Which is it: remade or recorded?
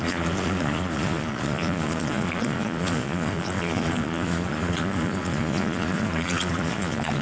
remade